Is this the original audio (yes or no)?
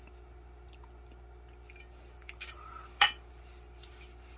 yes